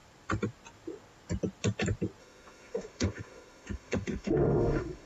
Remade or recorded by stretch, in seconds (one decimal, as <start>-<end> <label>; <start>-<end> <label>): 0.0-2.2 recorded; 2.2-5.1 remade